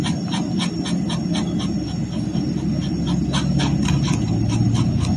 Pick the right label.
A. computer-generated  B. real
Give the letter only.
B